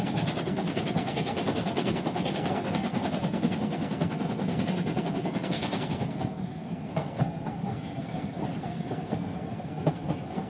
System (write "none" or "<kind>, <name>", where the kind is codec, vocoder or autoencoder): codec, SNAC